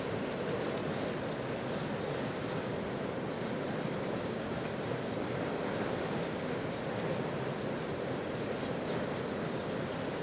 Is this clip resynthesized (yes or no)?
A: no